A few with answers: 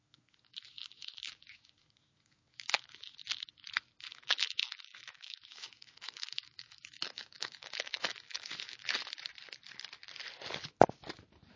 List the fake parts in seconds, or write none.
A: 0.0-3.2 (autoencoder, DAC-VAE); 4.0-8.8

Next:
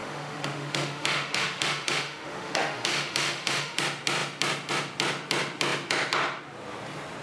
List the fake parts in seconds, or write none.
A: 0.0-3.8 (autoencoder, DAC-VAE)

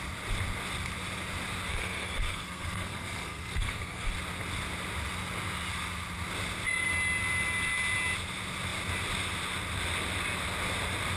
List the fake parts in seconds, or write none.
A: 1.7-4.1 (codec, SNAC)

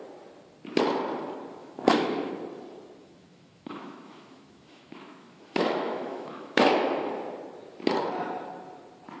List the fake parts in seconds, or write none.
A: 1.6-2.3 (autoencoder, DAC-VAE); 3.0-7.1

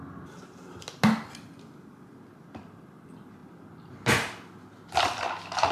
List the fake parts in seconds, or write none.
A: none

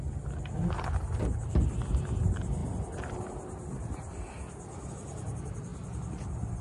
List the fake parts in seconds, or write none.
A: none